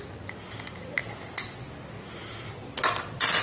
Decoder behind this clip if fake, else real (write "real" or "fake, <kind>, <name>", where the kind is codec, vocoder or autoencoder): real